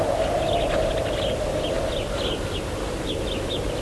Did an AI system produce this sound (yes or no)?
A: no